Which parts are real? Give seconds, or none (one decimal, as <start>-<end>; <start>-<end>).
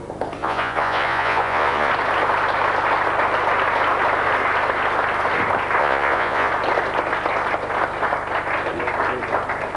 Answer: 0.0-0.4; 1.9-5.8; 6.5-9.8